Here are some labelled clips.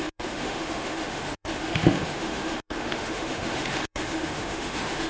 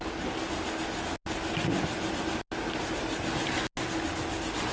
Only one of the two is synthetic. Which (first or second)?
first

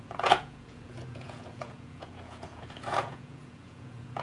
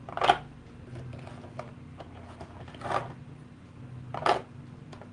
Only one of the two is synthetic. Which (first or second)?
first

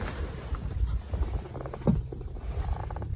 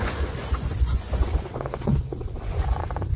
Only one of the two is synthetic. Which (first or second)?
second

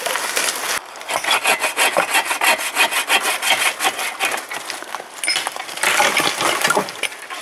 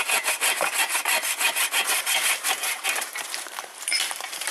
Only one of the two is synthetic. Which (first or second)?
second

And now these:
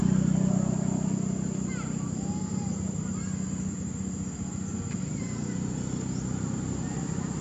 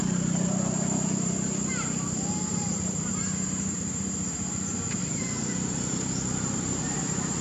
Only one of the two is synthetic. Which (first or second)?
second